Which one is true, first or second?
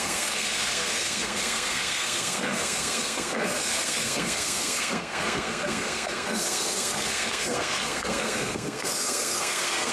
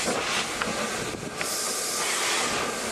second